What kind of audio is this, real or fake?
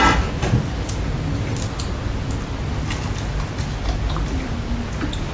real